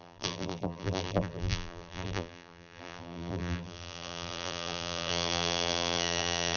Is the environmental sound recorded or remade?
remade